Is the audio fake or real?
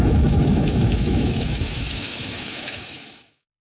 fake